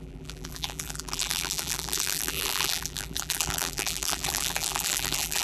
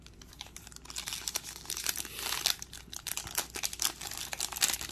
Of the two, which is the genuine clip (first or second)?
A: second